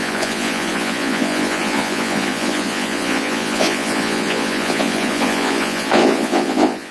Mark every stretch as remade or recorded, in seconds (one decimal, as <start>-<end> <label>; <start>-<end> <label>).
0.0-6.9 remade